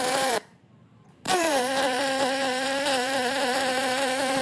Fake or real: fake